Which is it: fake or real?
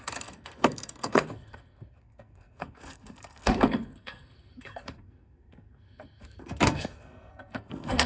fake